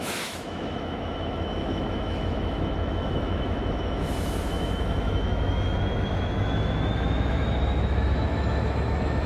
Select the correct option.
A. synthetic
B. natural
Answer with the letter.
A